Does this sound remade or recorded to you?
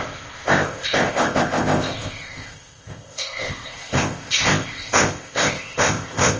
remade